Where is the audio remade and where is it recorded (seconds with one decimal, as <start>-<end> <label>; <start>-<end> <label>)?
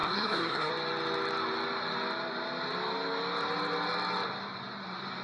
0.0-0.7 remade; 0.7-5.2 recorded